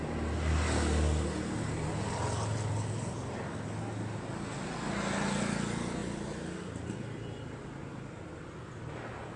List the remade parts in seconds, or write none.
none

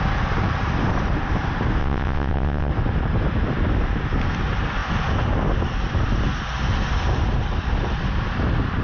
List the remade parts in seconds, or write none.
1.8-2.7 (vocoder, WaveNeXt)

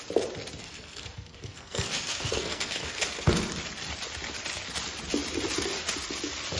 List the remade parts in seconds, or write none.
0.6-3.3 (codec, SNAC)

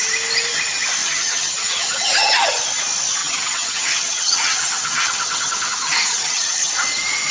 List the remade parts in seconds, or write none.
1.0-2.6 (vocoder, HiFi-GAN); 3.2-6.7

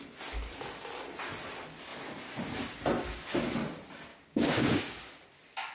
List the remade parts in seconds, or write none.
4.1-4.8 (codec, DAC)

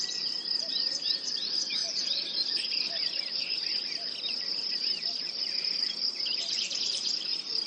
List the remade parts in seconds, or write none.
0.0-7.7 (vocoder, BigVGAN v2)